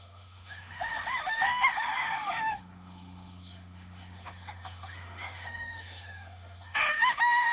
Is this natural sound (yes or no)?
no